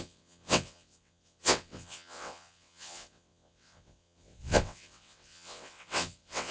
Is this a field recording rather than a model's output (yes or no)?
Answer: no